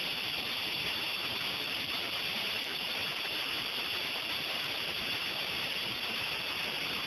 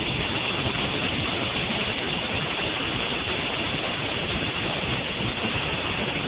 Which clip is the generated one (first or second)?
first